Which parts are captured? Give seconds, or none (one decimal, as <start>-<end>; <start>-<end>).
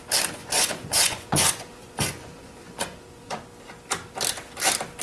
0.0-0.4; 3.4-5.0